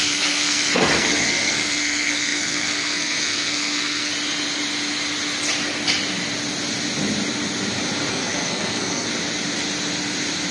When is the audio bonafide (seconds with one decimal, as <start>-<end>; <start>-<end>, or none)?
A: 4.1-8.1; 9.1-10.5